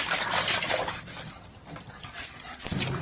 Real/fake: real